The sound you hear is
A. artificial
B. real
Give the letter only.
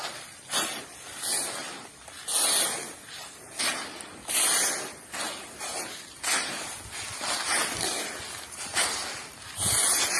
B